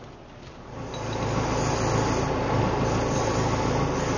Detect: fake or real real